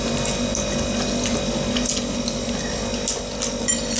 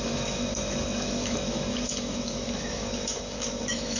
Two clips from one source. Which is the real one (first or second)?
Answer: first